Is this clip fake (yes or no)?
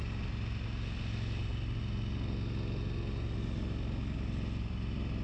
no